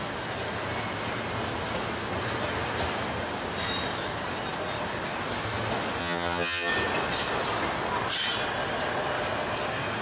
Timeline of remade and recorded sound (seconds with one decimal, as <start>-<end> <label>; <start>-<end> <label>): 0.0-6.0 recorded; 6.0-6.7 remade; 6.7-10.0 recorded